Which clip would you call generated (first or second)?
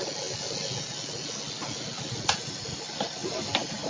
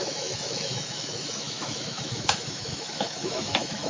second